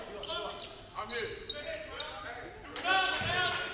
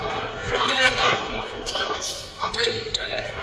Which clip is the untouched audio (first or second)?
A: first